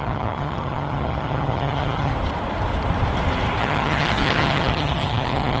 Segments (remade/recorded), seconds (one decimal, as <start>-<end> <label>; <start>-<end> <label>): 0.0-2.1 remade; 2.1-3.6 recorded; 3.6-5.6 remade